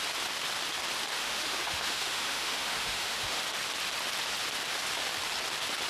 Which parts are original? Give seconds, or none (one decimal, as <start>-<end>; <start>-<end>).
0.0-1.1; 3.4-5.9